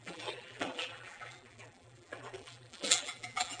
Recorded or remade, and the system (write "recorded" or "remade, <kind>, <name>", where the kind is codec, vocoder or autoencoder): remade, vocoder, BigVGAN v2